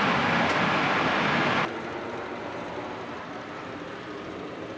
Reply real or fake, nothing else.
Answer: real